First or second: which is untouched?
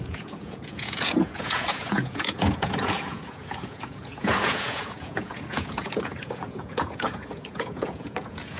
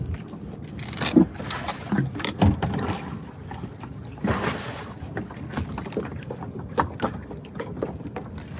second